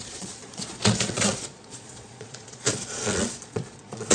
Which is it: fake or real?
fake